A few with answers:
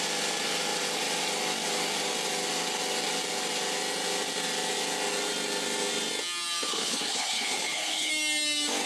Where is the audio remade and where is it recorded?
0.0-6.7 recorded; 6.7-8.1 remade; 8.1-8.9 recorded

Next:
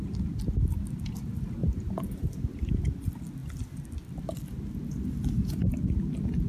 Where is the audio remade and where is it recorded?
0.0-1.6 recorded; 1.6-2.7 remade; 2.7-6.5 recorded

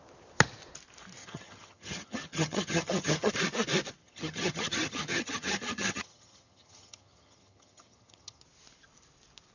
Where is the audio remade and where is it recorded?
0.0-1.2 recorded; 1.2-3.3 remade; 3.3-4.0 recorded; 4.0-8.4 remade; 8.4-9.5 recorded

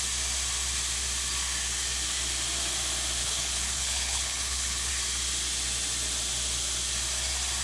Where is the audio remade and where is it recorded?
0.0-3.2 recorded; 3.2-4.9 remade; 4.9-7.6 recorded

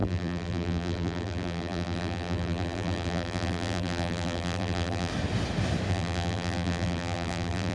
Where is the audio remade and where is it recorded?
0.0-5.1 remade; 5.1-5.9 recorded; 5.9-7.7 remade

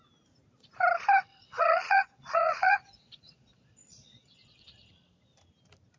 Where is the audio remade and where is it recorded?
0.0-1.3 recorded; 1.3-4.9 remade; 4.9-6.0 recorded